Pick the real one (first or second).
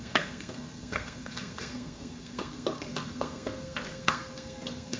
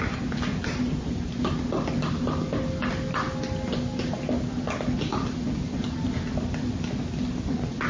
second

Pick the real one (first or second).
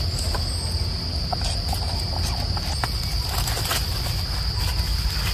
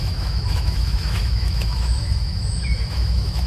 first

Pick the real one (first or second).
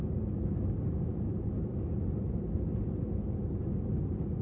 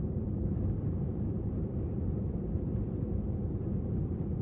first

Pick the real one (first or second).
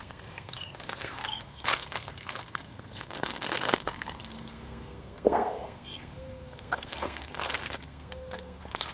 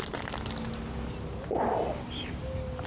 second